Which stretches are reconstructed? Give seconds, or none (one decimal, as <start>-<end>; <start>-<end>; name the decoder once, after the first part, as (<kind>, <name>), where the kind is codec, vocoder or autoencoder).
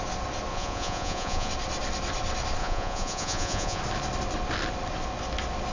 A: 0.5-1.5 (vocoder, Vocos); 2.6-3.8